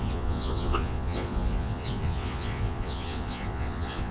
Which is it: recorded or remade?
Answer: remade